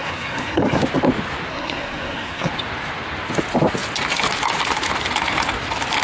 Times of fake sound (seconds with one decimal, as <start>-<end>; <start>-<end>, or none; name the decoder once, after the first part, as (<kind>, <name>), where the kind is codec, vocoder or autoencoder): 0.0-0.8 (codec, SNAC); 1.5-2.5